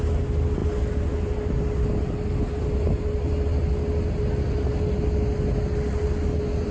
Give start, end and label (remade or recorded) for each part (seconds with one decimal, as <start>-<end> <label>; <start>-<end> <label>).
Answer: 0.0-6.7 recorded